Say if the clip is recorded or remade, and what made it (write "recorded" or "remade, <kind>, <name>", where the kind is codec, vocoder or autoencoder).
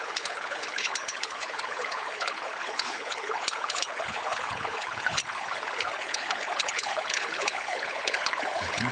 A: remade, codec, HILCodec